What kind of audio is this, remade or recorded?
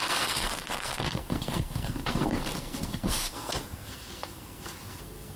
remade